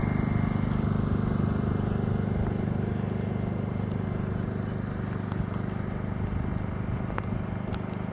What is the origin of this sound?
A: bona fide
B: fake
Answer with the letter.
A